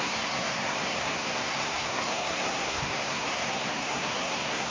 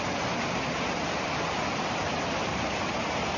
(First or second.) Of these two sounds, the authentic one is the second